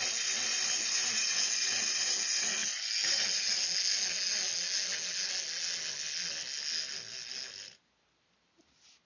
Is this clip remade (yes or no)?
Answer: no